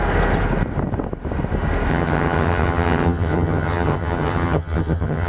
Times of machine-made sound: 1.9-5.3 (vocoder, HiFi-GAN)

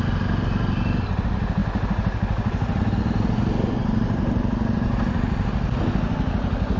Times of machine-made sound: none

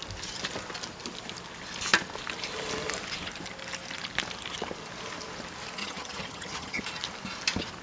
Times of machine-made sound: 5.8-6.8 (vocoder, HiFi-GAN)

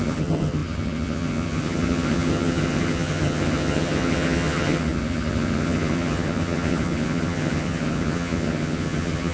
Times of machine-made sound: 0.0-9.3 (vocoder, HiFi-GAN)

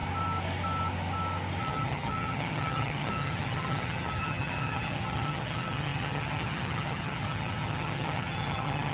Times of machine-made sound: 1.6-8.9 (vocoder, HiFi-GAN)

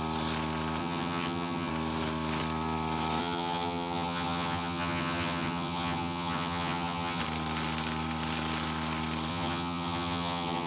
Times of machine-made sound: 0.8-1.7 (vocoder, HiFi-GAN); 3.2-7.2; 9.3-10.7

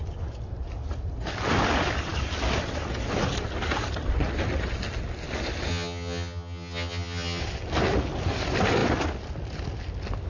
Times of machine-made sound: 5.7-7.4 (vocoder, HiFi-GAN)

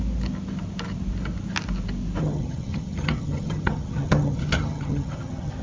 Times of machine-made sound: 2.2-5.6 (vocoder, HiFi-GAN)